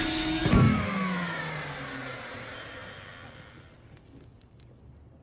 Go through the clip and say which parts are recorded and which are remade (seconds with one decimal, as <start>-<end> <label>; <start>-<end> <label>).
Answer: 0.0-0.7 recorded; 0.7-1.4 remade; 1.4-5.2 recorded